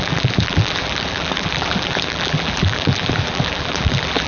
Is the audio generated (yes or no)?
yes